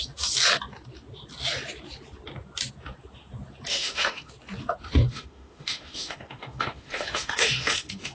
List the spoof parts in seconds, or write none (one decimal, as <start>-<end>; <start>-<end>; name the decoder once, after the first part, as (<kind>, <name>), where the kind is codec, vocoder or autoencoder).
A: 3.7-4.3 (autoencoder, DAC-VAE); 5.1-8.1